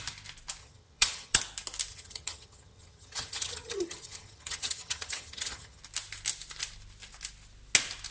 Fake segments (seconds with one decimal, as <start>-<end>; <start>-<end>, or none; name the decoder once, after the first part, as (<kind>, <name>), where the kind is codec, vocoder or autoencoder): 0.6-1.4 (vocoder, HiFi-GAN); 1.9-5.8